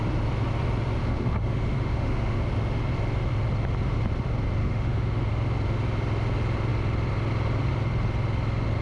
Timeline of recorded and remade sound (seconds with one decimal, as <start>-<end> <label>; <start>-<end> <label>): 0.0-1.0 recorded; 1.0-2.4 remade; 2.4-4.6 recorded; 4.6-5.3 remade; 5.3-8.8 recorded